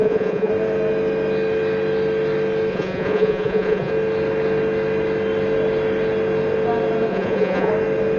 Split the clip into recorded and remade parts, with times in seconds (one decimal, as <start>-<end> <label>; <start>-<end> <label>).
0.0-0.5 remade; 0.5-2.7 recorded; 2.7-3.9 remade; 3.9-7.1 recorded; 7.1-7.7 remade; 7.7-8.2 recorded